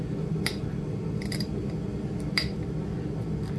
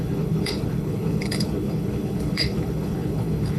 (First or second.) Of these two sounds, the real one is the first